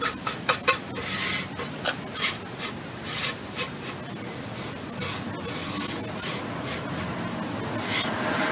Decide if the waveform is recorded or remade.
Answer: recorded